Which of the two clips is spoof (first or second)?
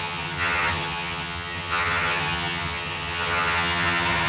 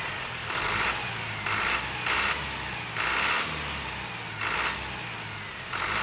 first